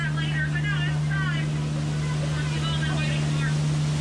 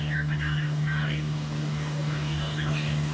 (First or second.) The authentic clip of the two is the first